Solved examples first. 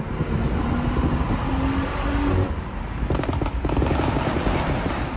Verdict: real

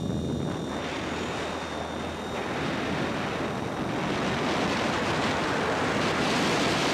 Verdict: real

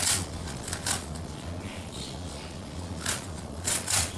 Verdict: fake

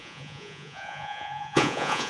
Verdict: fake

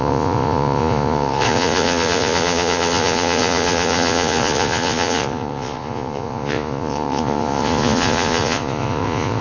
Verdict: fake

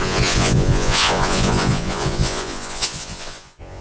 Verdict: fake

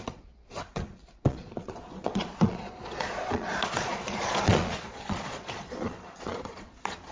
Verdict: fake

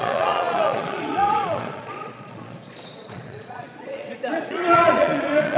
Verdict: fake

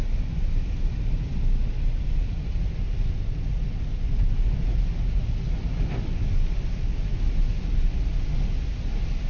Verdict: real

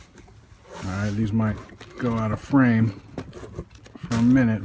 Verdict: real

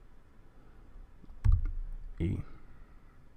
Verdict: real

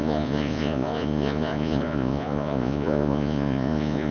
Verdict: fake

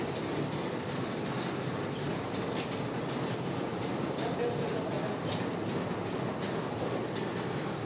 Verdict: real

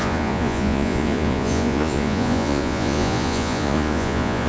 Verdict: fake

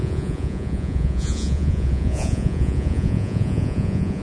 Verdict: fake